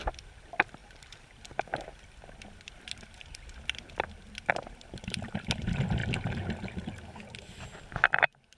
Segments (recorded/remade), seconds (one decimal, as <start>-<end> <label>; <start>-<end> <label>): 0.0-6.0 remade; 6.0-8.6 recorded